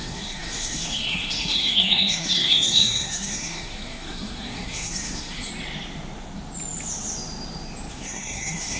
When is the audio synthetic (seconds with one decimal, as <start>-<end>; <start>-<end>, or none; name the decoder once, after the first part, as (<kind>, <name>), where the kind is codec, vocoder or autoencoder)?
0.0-5.5 (codec, SNAC); 7.9-8.8